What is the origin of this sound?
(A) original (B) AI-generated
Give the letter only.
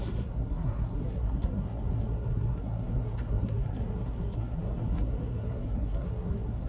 B